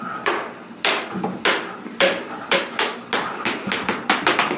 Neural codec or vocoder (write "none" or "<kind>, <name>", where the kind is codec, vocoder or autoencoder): none